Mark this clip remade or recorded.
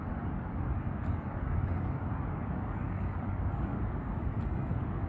remade